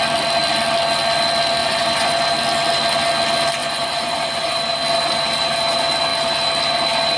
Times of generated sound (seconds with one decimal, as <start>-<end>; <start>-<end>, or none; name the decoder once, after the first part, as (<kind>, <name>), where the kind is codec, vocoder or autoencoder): 1.6-2.2 (vocoder, Vocos); 3.6-4.6

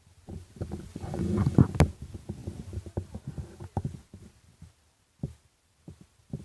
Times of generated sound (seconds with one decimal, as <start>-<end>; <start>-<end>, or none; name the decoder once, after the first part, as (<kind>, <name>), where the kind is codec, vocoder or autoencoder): 0.9-1.6 (vocoder, Vocos)

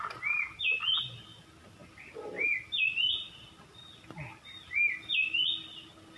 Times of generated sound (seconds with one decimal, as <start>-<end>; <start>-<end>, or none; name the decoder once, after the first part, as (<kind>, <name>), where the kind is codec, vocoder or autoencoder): none

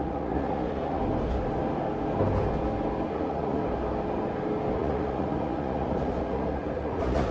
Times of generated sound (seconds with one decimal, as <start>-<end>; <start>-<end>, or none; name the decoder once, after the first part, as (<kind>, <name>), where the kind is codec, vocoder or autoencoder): 0.0-1.0 (vocoder, Vocos); 3.1-3.6; 4.7-7.3

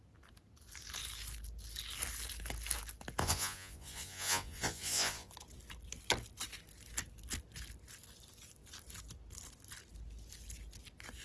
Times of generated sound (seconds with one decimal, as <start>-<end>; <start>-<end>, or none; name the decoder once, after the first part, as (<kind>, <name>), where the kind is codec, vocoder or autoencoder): 3.2-5.3 (vocoder, Vocos)

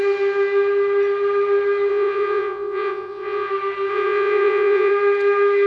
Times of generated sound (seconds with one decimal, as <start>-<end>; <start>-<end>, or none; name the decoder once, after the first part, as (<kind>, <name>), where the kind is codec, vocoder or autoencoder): 1.9-3.5 (vocoder, Vocos); 3.9-4.9

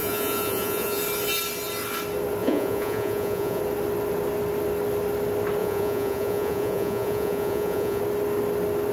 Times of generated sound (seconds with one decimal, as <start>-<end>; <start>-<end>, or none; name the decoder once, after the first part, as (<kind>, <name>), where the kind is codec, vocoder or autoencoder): 0.0-1.0 (vocoder, Vocos); 2.4-3.6; 5.6-8.0

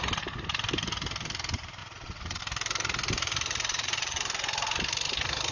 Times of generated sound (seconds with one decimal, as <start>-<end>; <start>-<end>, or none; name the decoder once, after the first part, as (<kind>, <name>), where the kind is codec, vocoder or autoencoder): 1.8-2.4 (vocoder, Vocos); 3.7-4.2